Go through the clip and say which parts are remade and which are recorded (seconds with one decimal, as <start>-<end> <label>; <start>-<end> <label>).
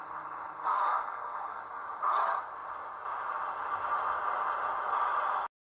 0.0-0.7 recorded; 0.7-1.6 remade; 1.6-5.6 recorded